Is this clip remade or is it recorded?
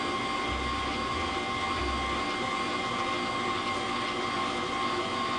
recorded